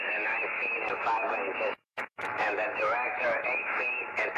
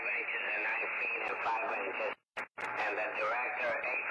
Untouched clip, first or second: second